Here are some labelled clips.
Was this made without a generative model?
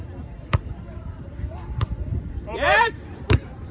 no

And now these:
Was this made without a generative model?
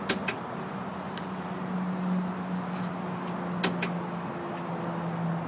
yes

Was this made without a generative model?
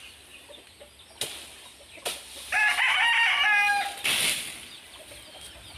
yes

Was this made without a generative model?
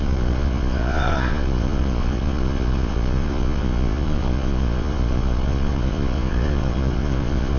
no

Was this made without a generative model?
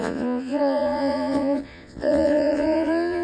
no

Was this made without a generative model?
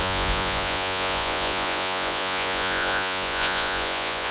no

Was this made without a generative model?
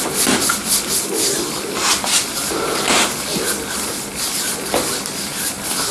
yes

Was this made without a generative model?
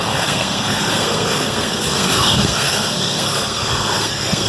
no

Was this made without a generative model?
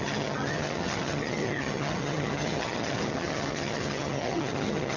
no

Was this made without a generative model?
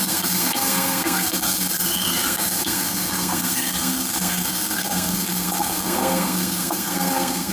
no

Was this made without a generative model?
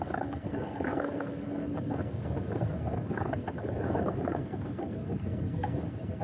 no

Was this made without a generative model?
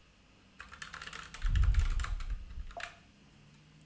yes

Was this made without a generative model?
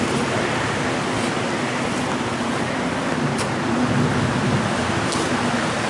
yes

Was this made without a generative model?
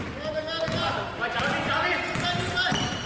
yes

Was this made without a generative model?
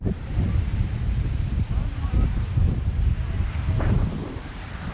no